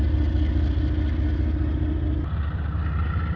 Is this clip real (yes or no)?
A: yes